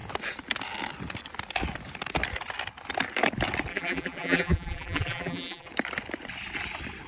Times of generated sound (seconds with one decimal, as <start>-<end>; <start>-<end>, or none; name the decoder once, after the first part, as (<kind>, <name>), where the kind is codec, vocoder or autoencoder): 3.7-5.7 (vocoder, BigVGAN v2)